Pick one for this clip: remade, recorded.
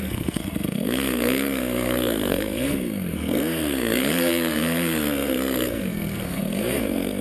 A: remade